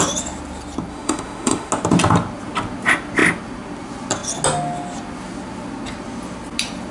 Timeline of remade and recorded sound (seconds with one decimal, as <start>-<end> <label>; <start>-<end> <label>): 0.0-0.9 recorded; 0.9-1.7 remade; 1.7-6.9 recorded